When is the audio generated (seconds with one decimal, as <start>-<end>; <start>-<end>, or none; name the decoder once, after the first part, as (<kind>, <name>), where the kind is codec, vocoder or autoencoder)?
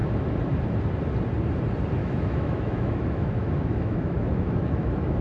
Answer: 2.0-5.2 (autoencoder, DAC-VAE)